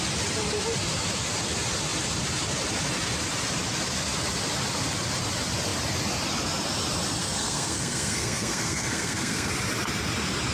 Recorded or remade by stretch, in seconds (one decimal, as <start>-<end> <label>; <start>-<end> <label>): 0.0-7.2 recorded; 7.2-9.5 remade; 9.5-10.5 recorded